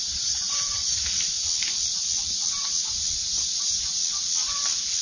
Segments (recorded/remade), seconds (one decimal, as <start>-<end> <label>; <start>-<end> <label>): 0.0-1.0 remade; 1.0-3.3 recorded; 3.3-4.0 remade; 4.0-5.0 recorded